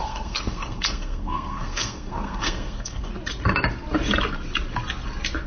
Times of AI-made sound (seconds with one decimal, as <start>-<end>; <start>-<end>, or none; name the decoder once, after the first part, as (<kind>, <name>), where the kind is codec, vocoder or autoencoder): 0.0-3.1 (codec, SNAC)